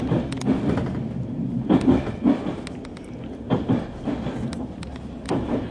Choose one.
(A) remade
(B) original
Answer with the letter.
B